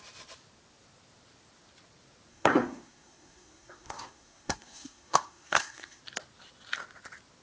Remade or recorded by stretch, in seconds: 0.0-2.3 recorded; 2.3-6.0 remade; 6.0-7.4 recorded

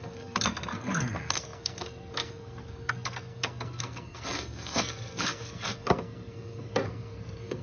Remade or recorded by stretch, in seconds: 0.0-7.6 remade

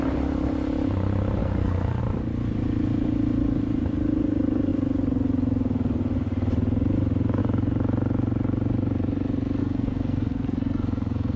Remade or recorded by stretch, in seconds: 0.0-1.4 recorded; 1.4-2.0 remade; 2.0-9.6 recorded; 9.6-11.4 remade